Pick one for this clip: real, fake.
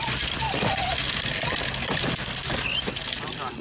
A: real